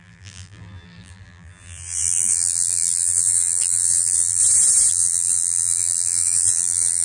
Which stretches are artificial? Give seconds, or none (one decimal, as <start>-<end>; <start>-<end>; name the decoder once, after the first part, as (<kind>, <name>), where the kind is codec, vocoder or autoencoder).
0.0-4.4 (vocoder, BigVGAN v2); 4.9-7.0